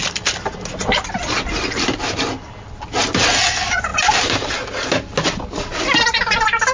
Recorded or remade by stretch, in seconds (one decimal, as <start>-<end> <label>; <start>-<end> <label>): 0.0-3.0 remade; 3.0-3.9 recorded; 3.9-4.5 remade; 4.5-6.7 recorded